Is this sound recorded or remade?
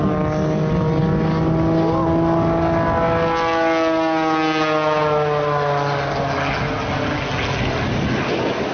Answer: recorded